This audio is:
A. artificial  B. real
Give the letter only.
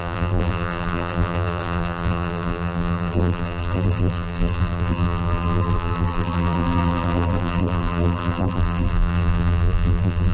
A